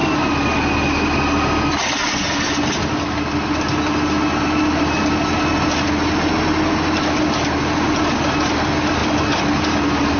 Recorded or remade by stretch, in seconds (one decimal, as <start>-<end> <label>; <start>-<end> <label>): 0.0-10.2 recorded